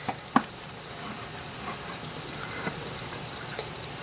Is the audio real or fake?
fake